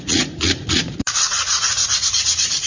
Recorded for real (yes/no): no